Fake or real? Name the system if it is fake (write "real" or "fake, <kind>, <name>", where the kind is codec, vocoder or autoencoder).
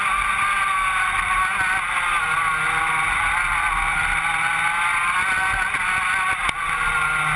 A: real